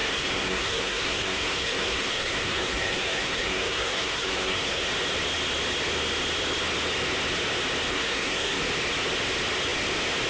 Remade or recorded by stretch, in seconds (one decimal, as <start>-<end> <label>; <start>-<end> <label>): 0.0-4.8 remade; 4.8-7.9 recorded; 7.9-8.6 remade; 8.6-10.3 recorded